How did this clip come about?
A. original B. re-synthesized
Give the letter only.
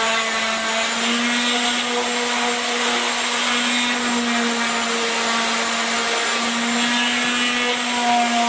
A